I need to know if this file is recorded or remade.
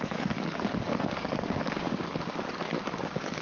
remade